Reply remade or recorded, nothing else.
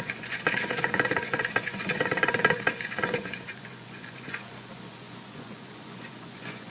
remade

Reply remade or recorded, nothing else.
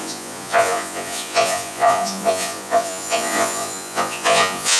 remade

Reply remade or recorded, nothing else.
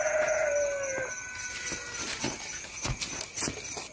recorded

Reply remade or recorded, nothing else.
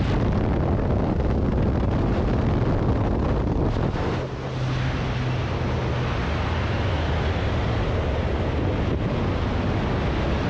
recorded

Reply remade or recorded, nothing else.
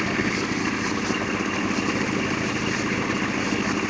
recorded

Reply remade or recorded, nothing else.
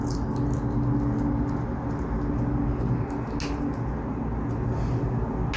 recorded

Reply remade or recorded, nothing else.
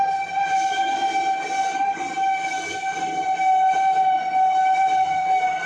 recorded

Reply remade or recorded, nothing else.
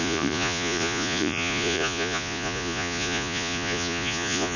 remade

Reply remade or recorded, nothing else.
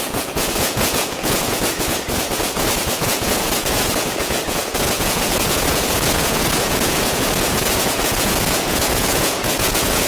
remade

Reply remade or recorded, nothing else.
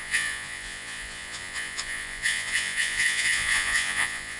remade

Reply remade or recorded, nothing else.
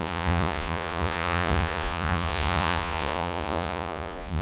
remade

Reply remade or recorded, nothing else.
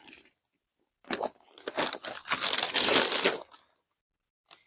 recorded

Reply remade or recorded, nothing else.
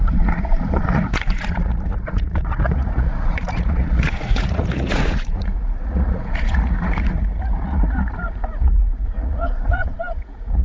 remade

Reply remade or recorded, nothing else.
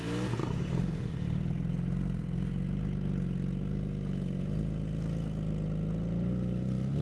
recorded